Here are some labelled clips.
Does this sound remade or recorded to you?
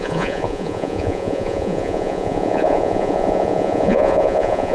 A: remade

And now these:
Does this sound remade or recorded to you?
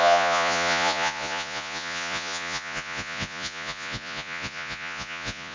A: remade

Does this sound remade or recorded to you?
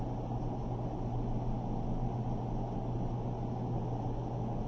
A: recorded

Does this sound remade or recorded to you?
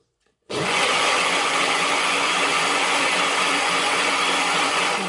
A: remade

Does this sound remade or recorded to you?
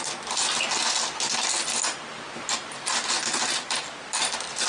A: recorded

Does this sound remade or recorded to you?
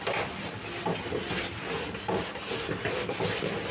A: recorded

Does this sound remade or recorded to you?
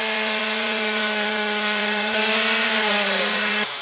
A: remade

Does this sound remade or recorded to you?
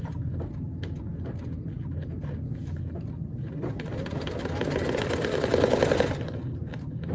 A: recorded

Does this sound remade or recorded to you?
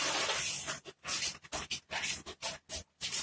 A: recorded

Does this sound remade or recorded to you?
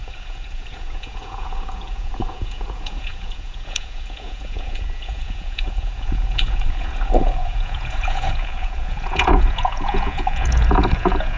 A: remade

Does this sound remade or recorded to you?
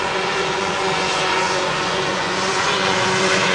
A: remade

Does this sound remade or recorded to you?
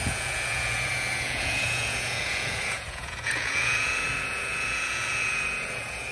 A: remade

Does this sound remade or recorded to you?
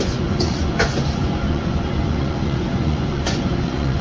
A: remade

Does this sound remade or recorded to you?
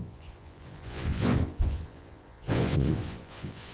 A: remade